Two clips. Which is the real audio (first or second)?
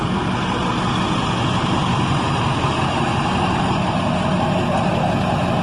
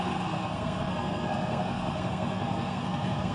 first